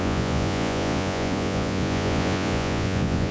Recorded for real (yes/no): no